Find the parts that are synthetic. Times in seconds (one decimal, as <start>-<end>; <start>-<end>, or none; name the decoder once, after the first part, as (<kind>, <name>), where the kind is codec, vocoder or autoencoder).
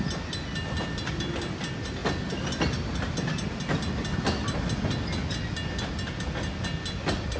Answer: none